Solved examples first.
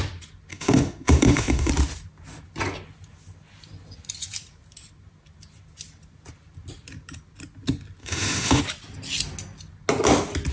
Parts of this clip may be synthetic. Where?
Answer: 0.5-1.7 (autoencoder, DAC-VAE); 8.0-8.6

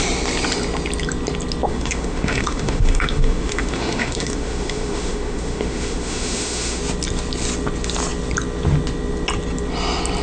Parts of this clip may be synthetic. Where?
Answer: 1.7-6.8 (autoencoder, DAC-VAE)